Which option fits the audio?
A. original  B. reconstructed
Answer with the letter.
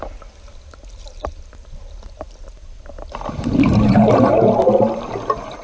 A